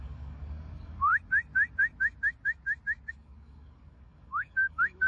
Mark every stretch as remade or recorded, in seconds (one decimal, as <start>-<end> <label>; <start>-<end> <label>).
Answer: 0.0-1.1 remade; 1.1-3.1 recorded; 3.1-5.1 remade